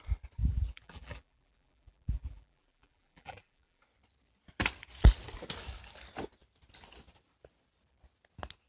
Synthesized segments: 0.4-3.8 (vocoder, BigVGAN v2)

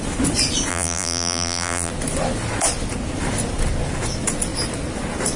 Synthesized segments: 0.7-1.9 (vocoder, BigVGAN v2)

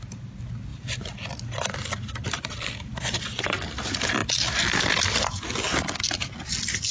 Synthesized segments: 0.7-3.1 (vocoder, BigVGAN v2)